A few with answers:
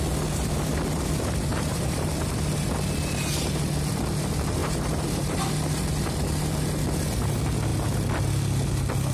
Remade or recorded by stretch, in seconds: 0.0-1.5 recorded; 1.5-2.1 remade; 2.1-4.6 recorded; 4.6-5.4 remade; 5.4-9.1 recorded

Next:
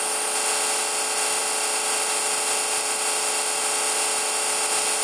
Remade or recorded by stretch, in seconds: 0.0-5.0 recorded

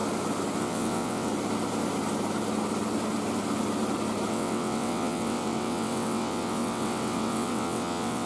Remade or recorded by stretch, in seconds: 0.0-0.6 recorded; 0.6-1.3 remade; 1.3-4.3 recorded; 4.3-8.3 remade

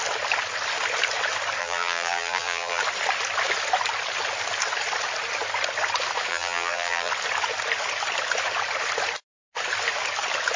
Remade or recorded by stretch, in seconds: 0.0-1.6 recorded; 1.6-2.8 remade; 2.8-6.3 recorded; 6.3-7.1 remade; 7.1-10.6 recorded